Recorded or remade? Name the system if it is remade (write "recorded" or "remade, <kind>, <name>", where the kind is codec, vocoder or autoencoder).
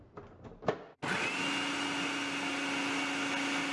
recorded